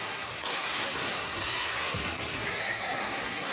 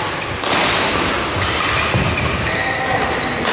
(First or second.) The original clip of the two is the second